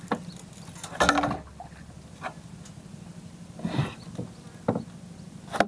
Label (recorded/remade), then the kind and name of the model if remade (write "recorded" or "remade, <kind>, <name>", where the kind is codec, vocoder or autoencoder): recorded